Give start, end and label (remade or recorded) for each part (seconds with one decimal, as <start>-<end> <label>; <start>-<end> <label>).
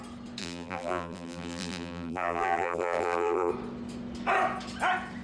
0.0-0.4 recorded; 0.4-3.5 remade; 3.5-5.2 recorded